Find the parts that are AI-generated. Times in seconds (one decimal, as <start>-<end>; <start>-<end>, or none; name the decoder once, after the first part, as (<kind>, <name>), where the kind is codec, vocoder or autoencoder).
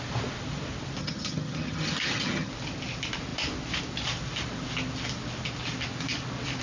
1.0-2.5 (vocoder, HiFi-GAN)